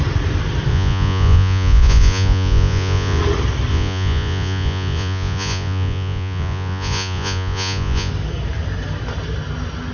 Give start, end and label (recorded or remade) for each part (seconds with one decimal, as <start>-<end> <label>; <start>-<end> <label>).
0.0-0.7 recorded; 0.7-3.2 remade; 3.2-3.7 recorded; 3.7-8.1 remade; 8.1-9.9 recorded